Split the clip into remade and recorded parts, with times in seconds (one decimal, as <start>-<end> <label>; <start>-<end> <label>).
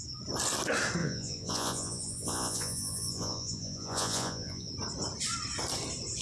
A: 0.0-1.0 recorded; 1.0-4.7 remade; 4.7-6.2 recorded